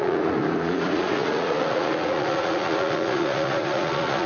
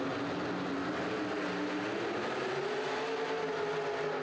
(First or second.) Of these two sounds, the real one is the second